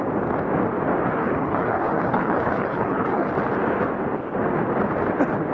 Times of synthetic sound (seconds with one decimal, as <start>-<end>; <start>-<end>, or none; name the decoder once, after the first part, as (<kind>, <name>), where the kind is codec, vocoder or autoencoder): 1.2-3.3 (codec, HILCodec)